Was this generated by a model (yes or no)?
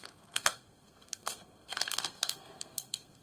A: yes